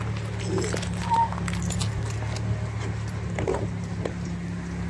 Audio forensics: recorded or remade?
recorded